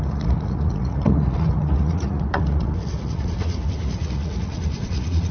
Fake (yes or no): yes